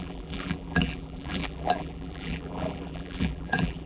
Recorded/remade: remade